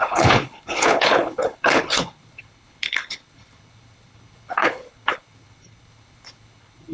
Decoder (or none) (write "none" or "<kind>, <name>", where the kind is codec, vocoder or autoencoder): codec, HILCodec